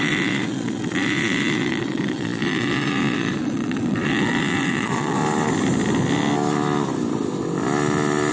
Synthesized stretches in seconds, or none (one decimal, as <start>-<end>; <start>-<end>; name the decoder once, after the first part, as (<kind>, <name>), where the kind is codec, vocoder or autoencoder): 0.0-5.2 (vocoder, Vocos)